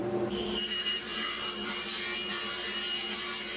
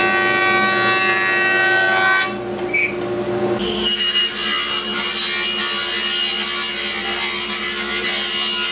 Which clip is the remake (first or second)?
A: first